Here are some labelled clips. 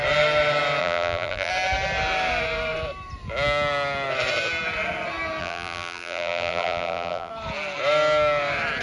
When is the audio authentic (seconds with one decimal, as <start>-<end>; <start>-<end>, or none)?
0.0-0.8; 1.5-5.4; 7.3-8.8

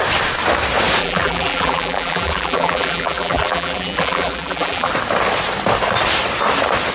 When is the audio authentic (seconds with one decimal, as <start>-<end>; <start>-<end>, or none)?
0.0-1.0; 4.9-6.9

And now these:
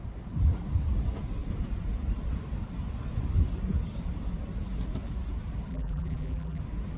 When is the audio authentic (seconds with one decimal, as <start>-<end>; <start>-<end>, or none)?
0.0-5.7; 6.6-7.0

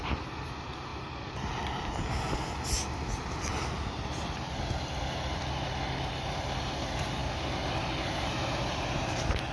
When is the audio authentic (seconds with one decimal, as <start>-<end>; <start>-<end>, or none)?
0.0-0.9; 1.9-3.5; 6.6-9.5